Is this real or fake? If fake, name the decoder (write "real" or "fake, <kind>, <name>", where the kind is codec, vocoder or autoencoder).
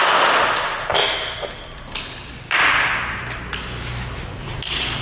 real